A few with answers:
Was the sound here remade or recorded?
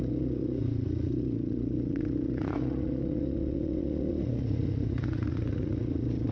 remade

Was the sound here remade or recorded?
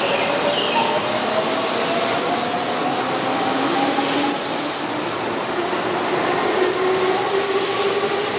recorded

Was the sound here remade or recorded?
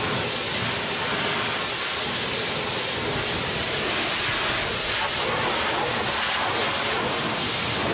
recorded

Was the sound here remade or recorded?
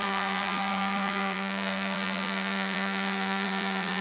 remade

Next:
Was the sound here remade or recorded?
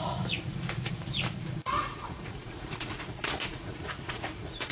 remade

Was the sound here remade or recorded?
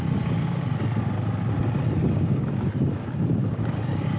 recorded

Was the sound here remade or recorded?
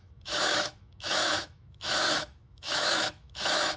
remade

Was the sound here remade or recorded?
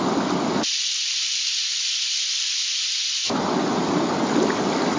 recorded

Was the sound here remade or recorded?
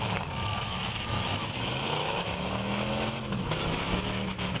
remade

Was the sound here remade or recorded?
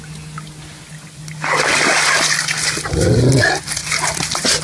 recorded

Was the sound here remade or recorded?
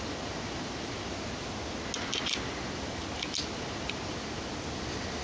recorded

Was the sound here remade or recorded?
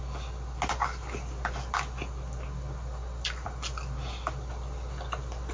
recorded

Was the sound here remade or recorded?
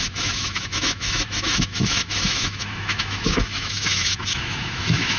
remade